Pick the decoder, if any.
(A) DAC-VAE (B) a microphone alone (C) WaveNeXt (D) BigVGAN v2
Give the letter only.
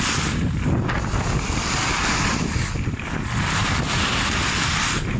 B